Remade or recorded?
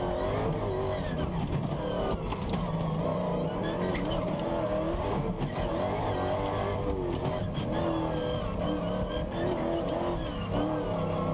recorded